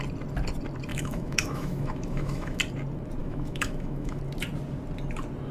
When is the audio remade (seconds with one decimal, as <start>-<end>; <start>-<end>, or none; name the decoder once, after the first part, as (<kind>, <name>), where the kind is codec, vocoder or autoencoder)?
0.9-2.6 (autoencoder, DAC-VAE); 3.2-4.2

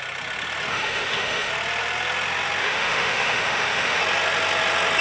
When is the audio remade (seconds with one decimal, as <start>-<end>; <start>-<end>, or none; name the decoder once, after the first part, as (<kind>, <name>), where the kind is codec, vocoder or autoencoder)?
0.7-1.5 (autoencoder, DAC-VAE); 2.6-4.0

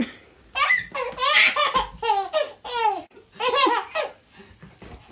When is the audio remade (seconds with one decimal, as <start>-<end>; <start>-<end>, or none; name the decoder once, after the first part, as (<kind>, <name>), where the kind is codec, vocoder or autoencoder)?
none

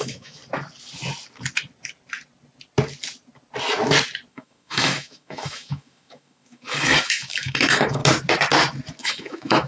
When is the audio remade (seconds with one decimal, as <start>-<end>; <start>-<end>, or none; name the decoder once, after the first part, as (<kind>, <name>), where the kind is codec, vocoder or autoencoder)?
0.0-0.4 (autoencoder, DAC-VAE); 4.3-8.0; 9.0-9.7

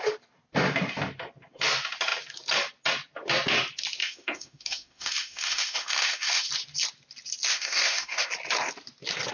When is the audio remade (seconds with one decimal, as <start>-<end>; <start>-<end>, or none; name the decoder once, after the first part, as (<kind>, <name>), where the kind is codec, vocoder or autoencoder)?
4.0-6.5 (autoencoder, DAC-VAE); 7.5-8.3

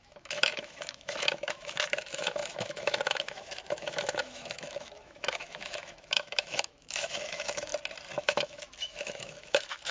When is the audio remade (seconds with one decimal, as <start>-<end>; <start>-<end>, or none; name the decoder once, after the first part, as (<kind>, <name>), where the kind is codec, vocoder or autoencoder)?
0.0-7.7 (autoencoder, DAC-VAE); 8.2-9.9